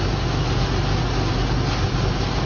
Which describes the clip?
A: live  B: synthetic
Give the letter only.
A